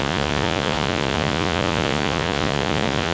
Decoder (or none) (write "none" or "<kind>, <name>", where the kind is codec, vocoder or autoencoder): vocoder, Vocos